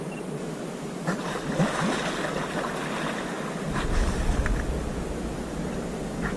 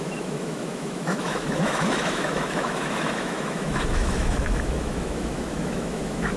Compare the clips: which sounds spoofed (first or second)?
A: second